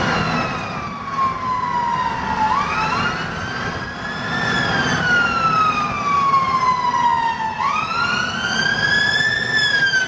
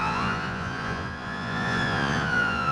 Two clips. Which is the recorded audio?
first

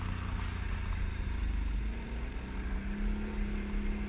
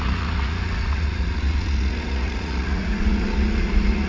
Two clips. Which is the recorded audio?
first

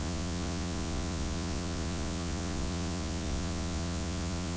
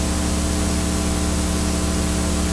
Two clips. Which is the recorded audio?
second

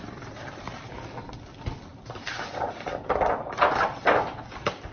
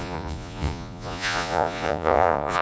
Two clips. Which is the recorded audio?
first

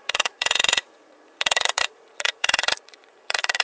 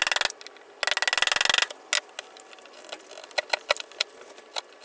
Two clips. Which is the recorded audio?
second